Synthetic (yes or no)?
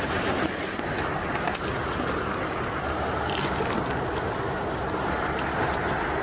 no